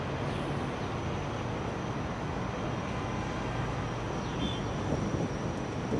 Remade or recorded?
recorded